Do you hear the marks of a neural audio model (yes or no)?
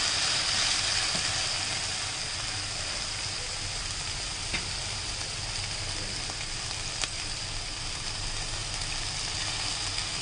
no